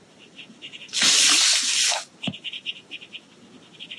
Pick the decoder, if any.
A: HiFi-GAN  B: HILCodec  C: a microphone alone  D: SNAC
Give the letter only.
C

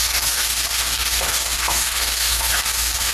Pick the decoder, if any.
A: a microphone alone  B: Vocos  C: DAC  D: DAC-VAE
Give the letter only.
C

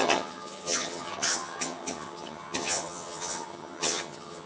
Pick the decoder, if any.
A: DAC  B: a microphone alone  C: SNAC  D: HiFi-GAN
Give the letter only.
D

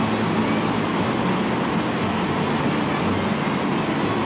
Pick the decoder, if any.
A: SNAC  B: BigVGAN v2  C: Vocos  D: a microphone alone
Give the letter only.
D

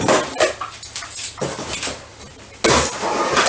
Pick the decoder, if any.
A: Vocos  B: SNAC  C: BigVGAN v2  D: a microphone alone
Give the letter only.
D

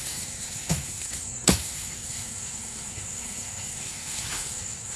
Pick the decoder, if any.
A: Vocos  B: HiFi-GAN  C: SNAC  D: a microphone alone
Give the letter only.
C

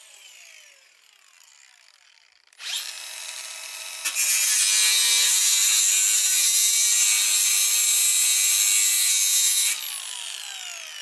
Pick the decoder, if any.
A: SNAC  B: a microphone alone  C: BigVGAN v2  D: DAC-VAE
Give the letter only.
B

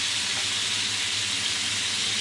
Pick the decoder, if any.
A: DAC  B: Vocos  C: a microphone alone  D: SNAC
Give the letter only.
C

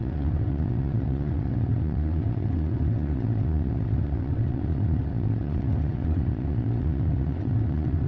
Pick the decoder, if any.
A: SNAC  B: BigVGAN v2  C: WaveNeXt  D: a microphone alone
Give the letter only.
C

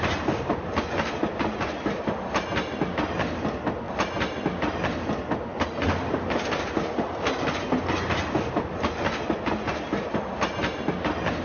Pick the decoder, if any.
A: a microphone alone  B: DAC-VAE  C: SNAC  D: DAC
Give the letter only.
A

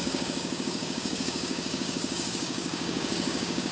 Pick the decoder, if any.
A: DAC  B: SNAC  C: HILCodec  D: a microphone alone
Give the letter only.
A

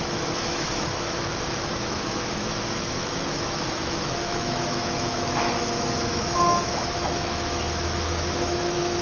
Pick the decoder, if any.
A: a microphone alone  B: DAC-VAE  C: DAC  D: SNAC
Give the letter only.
B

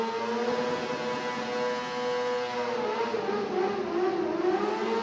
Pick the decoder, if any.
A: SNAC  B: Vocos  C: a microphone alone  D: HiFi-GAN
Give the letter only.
C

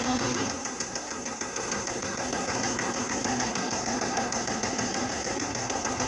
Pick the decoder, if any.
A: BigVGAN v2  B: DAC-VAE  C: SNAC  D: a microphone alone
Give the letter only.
C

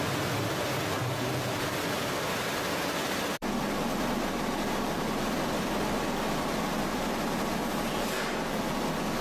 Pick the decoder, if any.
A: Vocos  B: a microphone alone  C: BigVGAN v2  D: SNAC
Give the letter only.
C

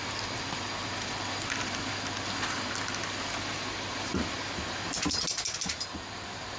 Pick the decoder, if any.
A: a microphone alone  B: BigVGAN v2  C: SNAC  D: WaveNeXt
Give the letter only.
A